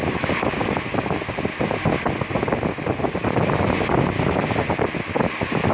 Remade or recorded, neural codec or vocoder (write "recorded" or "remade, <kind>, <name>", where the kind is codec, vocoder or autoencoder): recorded